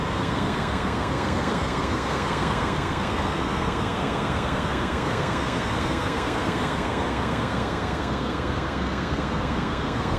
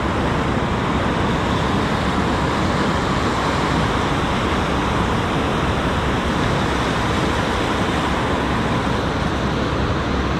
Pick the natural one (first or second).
second